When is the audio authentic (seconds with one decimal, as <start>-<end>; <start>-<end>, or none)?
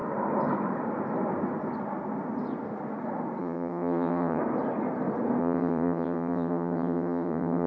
0.0-3.4; 4.4-5.4